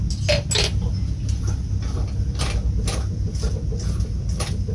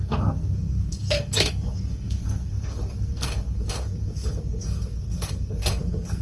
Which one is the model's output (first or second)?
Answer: second